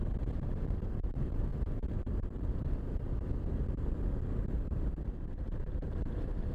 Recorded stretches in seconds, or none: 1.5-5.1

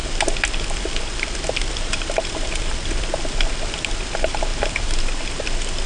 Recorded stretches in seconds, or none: 0.0-5.9

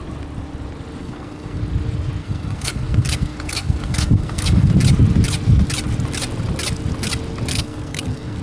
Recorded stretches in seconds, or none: 0.0-1.0; 1.6-2.2; 4.7-7.5

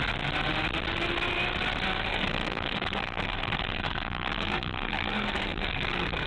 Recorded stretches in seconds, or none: 0.0-2.1